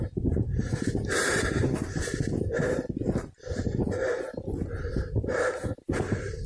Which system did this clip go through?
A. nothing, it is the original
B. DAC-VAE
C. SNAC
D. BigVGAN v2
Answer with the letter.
A